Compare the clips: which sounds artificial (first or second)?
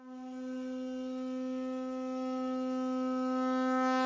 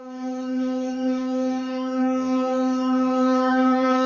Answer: second